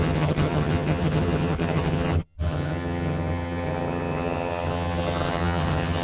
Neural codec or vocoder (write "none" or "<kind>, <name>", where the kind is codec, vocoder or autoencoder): vocoder, HiFi-GAN